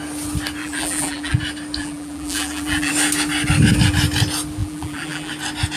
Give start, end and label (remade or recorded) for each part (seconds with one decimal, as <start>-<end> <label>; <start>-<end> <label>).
0.0-0.6 recorded; 0.6-1.4 remade; 1.4-1.8 recorded; 1.8-2.9 remade; 2.9-4.6 recorded; 4.6-5.3 remade; 5.3-5.8 recorded